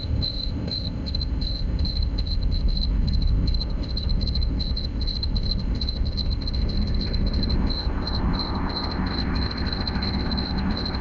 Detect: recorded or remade remade